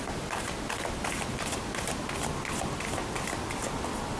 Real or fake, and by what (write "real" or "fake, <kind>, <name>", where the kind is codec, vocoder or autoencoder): real